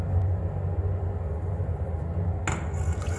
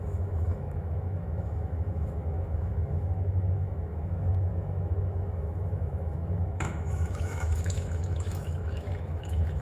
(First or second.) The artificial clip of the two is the second